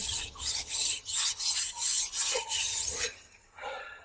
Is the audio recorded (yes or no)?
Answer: no